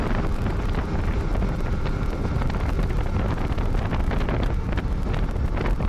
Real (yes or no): yes